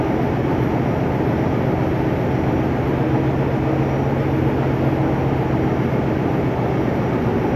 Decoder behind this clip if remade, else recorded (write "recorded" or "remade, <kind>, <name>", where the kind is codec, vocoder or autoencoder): recorded